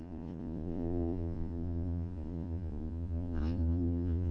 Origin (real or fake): fake